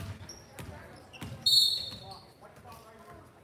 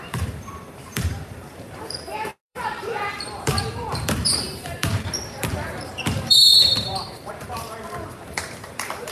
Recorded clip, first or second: first